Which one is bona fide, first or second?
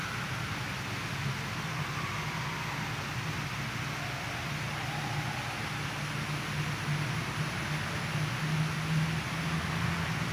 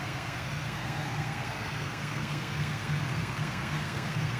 first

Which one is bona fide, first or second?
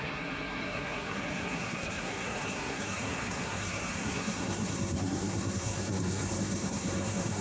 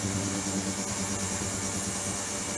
second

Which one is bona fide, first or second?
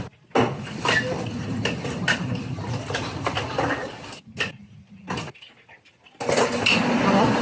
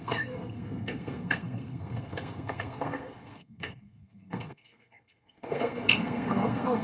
first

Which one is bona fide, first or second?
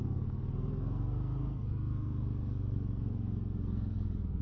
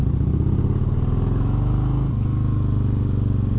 second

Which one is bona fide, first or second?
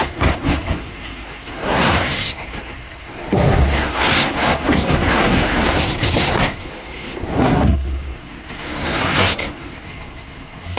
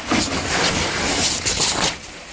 second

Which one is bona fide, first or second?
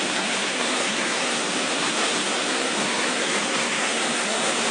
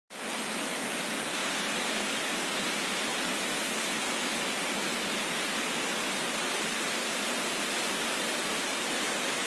second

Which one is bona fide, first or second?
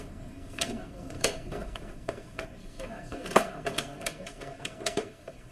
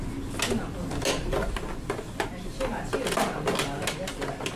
second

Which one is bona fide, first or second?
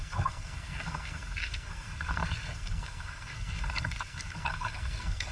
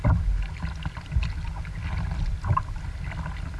second